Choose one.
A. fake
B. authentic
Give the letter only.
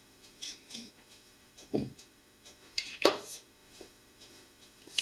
A